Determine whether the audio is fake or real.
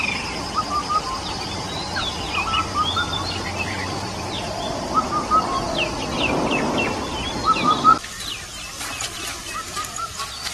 real